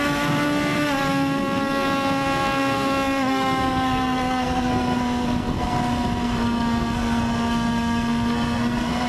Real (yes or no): no